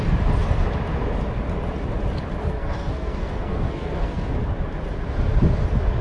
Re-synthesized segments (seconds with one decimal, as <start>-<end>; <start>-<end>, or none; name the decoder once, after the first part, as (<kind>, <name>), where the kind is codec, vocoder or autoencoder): 2.4-4.4 (codec, SNAC)